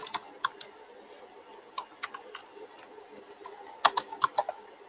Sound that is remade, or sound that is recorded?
recorded